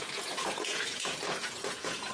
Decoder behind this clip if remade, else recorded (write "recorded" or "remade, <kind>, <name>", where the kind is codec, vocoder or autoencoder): remade, vocoder, Vocos